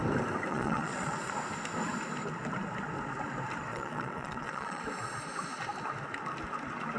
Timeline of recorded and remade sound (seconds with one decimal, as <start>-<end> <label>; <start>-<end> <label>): 0.0-0.5 recorded; 0.5-1.3 remade; 1.3-3.7 recorded; 3.7-4.8 remade; 4.8-7.0 recorded